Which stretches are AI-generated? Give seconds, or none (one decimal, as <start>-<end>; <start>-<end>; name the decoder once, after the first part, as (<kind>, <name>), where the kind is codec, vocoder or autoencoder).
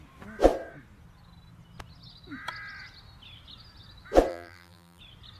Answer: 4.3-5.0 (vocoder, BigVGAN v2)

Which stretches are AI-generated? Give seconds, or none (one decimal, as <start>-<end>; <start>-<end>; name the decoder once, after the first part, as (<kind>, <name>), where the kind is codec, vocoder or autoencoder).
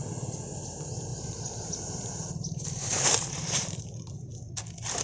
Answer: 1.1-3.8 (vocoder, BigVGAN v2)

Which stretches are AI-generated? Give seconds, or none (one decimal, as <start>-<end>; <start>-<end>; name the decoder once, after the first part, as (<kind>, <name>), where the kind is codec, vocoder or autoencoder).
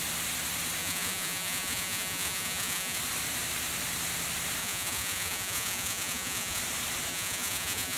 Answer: 0.8-3.0 (vocoder, Vocos); 4.6-6.6; 7.1-8.0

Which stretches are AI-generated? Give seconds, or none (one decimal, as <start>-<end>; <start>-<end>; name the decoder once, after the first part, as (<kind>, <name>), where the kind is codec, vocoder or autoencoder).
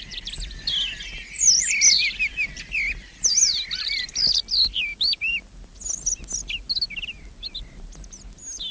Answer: none